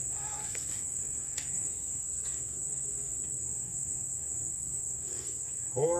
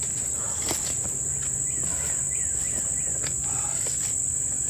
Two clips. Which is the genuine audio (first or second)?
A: second